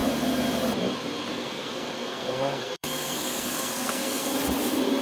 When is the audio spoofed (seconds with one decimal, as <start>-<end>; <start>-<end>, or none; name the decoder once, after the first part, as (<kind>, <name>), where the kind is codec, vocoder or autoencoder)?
1.3-4.3 (codec, SNAC)